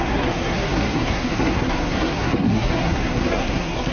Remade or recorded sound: remade